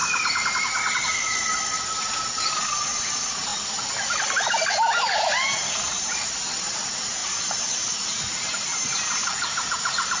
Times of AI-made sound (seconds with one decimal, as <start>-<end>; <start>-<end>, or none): 2.5-3.5; 5.0-10.2